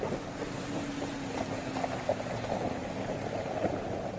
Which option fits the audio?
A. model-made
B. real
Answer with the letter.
B